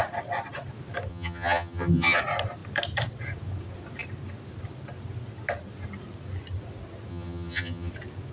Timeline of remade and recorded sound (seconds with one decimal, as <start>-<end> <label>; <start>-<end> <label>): 0.0-1.1 recorded; 1.1-2.2 remade; 2.2-7.1 recorded; 7.1-7.9 remade; 7.9-8.3 recorded